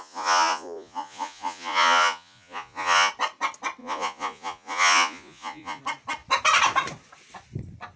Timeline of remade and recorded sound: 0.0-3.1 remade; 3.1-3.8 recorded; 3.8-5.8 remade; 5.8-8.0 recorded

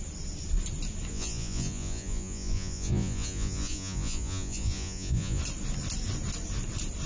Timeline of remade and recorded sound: 0.0-1.1 recorded; 1.1-5.4 remade; 5.4-7.1 recorded

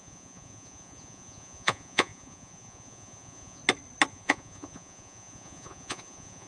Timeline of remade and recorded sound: 0.0-3.6 remade; 3.6-4.1 recorded; 4.1-6.5 remade

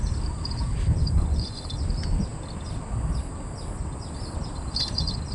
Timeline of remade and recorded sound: 0.0-0.9 recorded; 0.9-1.6 remade; 1.6-5.3 recorded

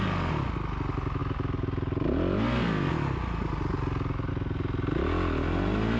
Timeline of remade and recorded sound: 0.0-6.0 recorded